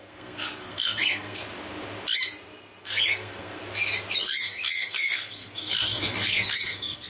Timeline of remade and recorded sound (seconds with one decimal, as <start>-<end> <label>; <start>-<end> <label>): 0.0-1.4 remade; 1.4-2.8 recorded; 2.8-3.6 remade; 3.6-4.2 recorded; 4.2-7.1 remade